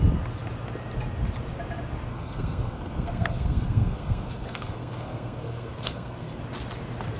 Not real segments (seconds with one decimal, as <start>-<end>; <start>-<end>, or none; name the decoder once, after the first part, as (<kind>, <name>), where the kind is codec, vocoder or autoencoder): 2.1-6.4 (codec, SNAC)